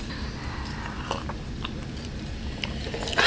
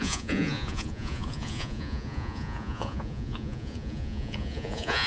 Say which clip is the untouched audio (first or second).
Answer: first